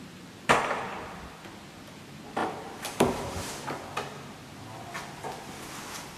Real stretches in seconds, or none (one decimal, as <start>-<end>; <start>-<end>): 0.0-2.4; 3.5-6.2